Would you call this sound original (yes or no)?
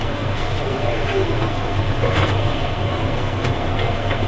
no